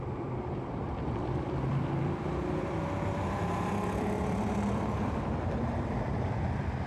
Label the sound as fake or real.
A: fake